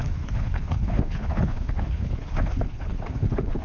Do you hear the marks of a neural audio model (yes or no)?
yes